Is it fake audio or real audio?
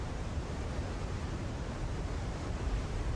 fake